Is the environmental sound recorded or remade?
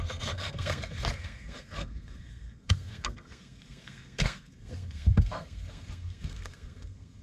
remade